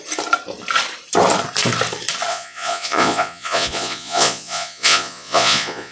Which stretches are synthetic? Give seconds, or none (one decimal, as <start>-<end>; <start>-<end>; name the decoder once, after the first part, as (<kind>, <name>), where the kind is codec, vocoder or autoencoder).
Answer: 2.3-5.9 (vocoder, Vocos)